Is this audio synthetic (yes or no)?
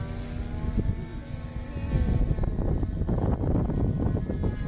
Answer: no